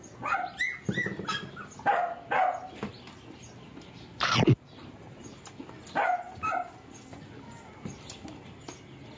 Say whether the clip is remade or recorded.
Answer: recorded